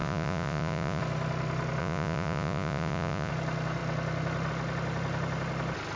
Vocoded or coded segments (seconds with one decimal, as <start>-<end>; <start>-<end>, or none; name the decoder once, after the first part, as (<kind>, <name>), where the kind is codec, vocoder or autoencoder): 0.0-1.0 (vocoder, Vocos); 1.8-3.3